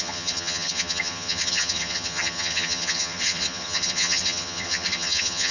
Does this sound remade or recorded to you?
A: remade